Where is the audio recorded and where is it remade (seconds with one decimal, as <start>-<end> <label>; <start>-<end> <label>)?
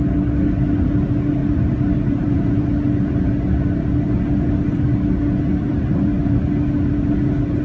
0.0-1.4 recorded; 1.4-2.6 remade; 2.6-5.7 recorded; 5.7-6.4 remade; 6.4-7.6 recorded